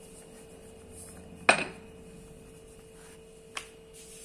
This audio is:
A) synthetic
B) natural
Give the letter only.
B